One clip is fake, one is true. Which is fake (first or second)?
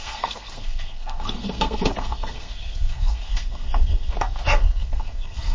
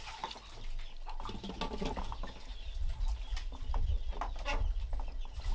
first